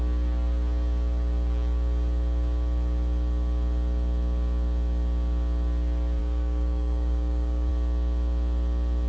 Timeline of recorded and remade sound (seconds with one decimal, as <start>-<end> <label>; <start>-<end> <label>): 0.0-6.2 recorded; 6.2-7.7 remade; 7.7-9.1 recorded